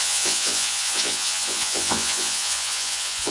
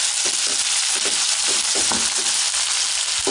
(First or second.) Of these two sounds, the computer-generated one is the first